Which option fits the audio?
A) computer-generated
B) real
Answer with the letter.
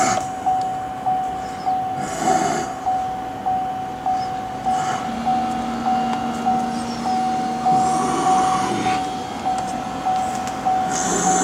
B